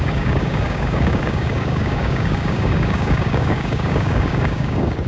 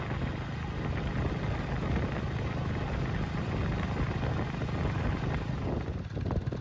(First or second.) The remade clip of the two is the first